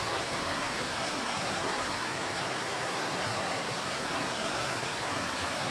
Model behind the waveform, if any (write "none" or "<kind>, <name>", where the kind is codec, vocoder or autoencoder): codec, SNAC